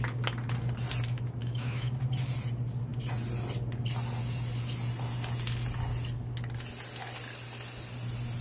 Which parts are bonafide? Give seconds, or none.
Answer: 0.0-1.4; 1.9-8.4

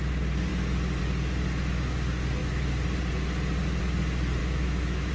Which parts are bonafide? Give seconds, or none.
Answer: 0.0-4.4

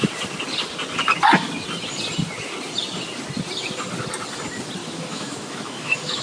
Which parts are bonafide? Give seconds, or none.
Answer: 0.0-4.8